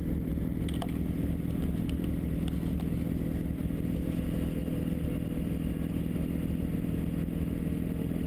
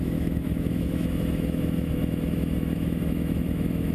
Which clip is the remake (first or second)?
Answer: second